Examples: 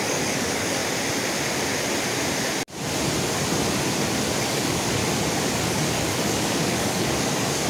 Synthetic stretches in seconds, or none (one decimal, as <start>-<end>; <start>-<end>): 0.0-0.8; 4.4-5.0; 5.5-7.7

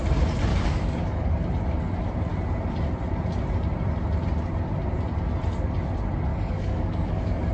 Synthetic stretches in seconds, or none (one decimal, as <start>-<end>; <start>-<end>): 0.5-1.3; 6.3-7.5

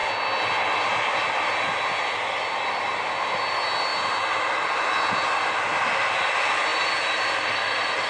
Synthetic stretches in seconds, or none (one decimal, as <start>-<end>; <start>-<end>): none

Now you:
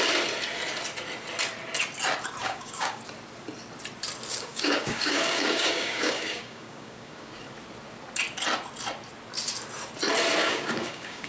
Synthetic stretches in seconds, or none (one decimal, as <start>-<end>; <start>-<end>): 2.4-3.0; 4.3-7.4; 10.4-11.3